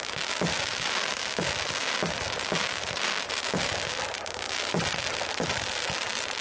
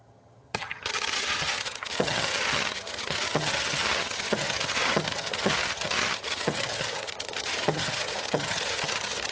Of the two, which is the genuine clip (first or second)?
first